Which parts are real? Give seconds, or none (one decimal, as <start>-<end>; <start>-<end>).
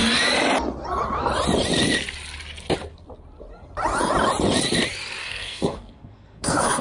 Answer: 0.0-5.2